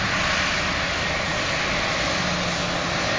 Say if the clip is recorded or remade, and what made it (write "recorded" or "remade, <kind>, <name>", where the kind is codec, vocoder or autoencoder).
recorded